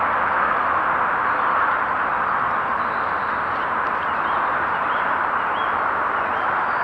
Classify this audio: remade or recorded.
recorded